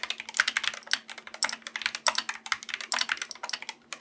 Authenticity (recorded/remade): recorded